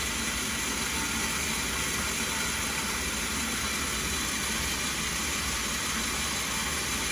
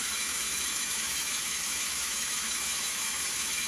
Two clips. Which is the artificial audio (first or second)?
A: second